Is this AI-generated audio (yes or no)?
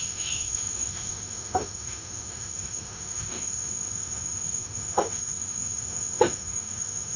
yes